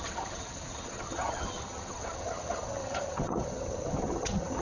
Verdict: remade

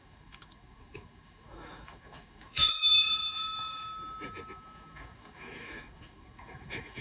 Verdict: remade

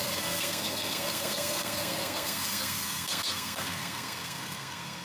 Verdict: remade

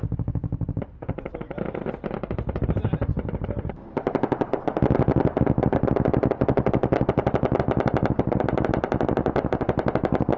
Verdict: recorded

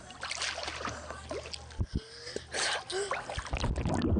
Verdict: recorded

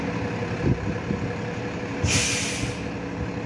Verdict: recorded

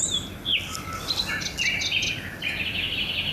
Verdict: recorded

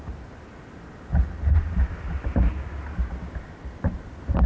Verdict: recorded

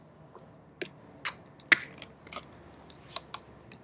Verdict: recorded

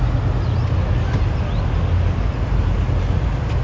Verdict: recorded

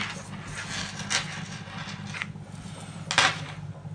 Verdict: recorded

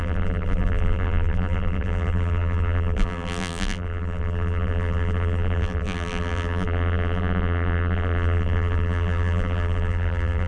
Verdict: remade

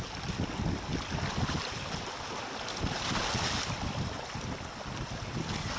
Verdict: recorded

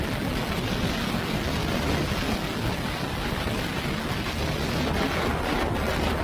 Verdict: recorded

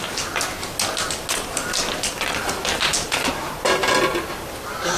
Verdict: recorded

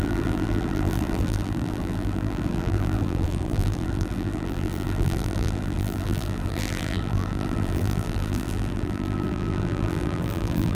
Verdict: remade